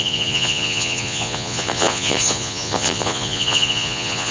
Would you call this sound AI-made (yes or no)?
yes